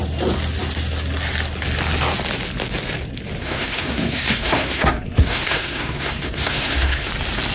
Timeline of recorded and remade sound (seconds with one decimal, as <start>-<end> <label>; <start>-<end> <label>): 0.0-3.4 recorded; 3.4-7.1 remade; 7.1-7.5 recorded